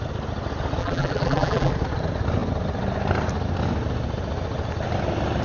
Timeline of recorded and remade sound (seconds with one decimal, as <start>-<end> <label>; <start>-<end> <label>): 0.0-0.8 recorded; 0.8-1.7 remade; 1.7-5.4 recorded